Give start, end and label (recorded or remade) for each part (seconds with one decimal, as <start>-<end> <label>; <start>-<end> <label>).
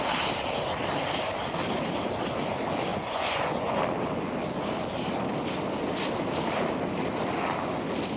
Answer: 0.0-2.9 recorded; 2.9-3.8 remade; 3.8-8.2 recorded